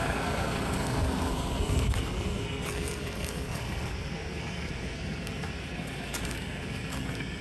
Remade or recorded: remade